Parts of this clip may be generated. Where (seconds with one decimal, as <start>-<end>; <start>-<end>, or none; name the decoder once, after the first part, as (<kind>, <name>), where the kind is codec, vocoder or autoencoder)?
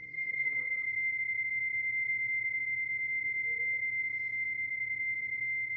0.0-0.7 (codec, SNAC)